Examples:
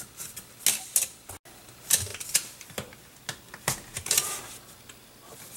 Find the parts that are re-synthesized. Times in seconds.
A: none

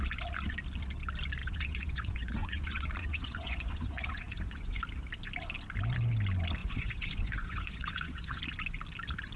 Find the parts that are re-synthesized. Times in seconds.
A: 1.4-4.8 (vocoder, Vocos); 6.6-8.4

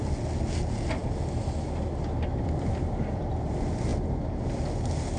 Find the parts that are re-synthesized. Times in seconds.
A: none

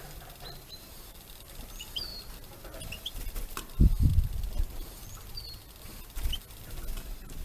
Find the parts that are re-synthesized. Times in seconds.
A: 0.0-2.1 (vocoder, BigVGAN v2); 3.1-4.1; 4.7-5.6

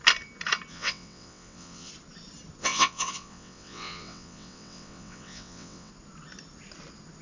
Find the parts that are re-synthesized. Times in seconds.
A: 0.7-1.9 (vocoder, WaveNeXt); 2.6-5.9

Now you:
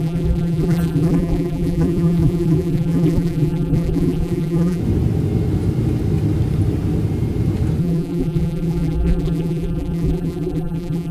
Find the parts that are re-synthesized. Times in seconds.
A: 0.0-4.8 (vocoder, BigVGAN v2); 7.8-11.1

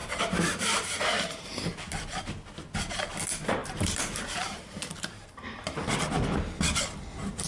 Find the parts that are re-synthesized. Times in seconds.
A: 0.0-1.7 (vocoder, BigVGAN v2); 3.6-5.9

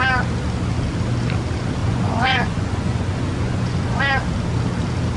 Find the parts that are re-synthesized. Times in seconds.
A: 1.8-4.0 (vocoder, Vocos)